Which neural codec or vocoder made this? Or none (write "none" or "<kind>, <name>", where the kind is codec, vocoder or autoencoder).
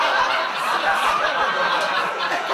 none